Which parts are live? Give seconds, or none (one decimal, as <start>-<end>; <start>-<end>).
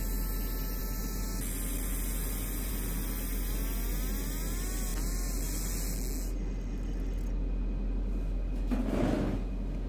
0.0-9.9